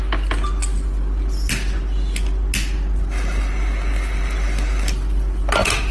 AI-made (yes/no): no